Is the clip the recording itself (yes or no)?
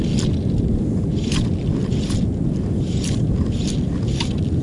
yes